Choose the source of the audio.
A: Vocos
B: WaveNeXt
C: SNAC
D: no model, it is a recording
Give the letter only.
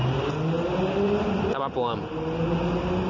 D